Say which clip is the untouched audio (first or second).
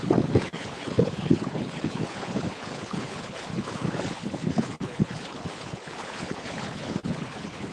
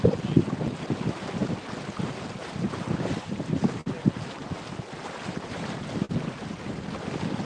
second